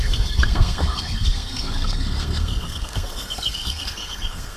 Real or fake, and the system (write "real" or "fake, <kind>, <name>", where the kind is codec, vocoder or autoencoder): fake, codec, SNAC